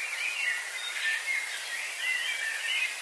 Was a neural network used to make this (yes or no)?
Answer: no